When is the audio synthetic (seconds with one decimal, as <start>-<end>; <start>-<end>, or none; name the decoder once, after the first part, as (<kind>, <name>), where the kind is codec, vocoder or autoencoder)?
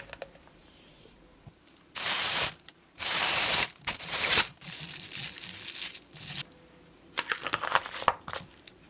0.6-4.8 (vocoder, BigVGAN v2)